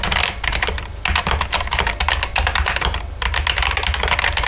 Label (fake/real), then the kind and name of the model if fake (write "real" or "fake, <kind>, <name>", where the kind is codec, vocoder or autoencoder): real